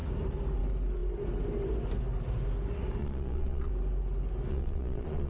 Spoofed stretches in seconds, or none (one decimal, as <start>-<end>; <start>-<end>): 3.0-3.7; 4.5-5.3

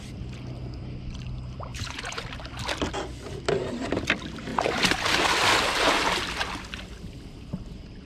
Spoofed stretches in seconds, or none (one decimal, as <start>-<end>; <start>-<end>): 1.7-2.2

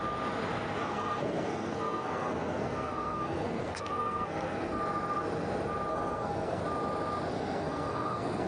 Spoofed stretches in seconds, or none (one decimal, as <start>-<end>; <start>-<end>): 0.8-4.8; 5.9-6.6; 7.3-8.5

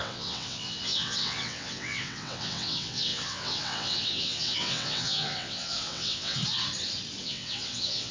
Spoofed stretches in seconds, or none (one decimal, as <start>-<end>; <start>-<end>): 0.0-6.4; 7.2-8.1

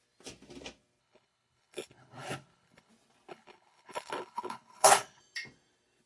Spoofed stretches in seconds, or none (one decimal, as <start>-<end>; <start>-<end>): 1.0-2.9; 3.3-5.2

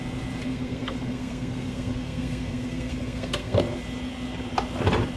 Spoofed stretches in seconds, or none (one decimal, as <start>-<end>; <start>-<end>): 0.5-3.6

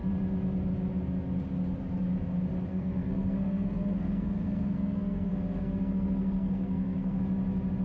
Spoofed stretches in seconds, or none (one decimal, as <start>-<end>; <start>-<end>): 2.7-7.2